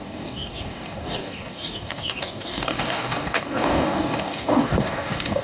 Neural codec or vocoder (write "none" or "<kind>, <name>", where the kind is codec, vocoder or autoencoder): codec, DAC